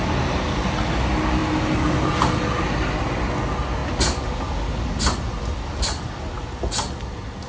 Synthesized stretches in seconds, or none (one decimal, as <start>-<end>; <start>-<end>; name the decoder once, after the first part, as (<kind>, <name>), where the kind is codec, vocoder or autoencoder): none